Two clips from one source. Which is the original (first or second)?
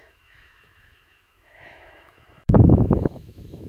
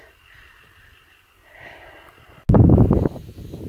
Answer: second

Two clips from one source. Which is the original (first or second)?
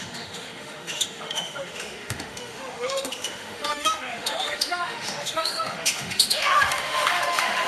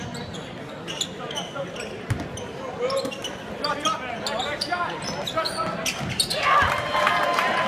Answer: second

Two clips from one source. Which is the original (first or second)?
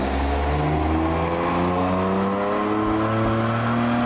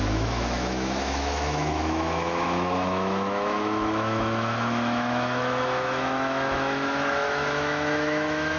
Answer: first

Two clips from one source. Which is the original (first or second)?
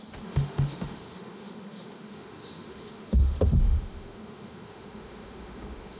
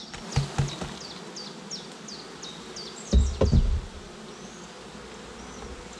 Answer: second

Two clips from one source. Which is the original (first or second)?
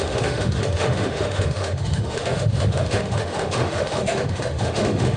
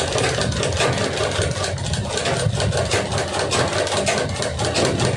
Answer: second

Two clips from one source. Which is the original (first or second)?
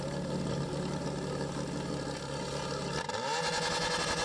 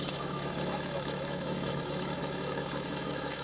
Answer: first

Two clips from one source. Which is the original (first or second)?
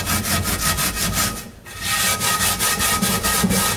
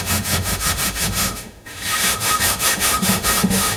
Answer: first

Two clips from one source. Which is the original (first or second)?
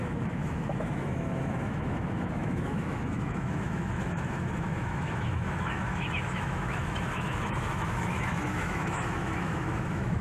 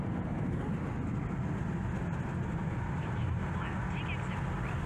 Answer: second